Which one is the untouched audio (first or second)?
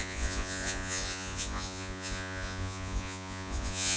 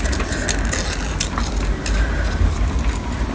second